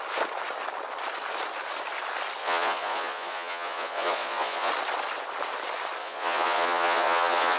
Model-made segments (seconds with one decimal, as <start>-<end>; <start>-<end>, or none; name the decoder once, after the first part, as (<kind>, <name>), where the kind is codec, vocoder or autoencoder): 2.4-4.7 (vocoder, Vocos); 6.0-7.6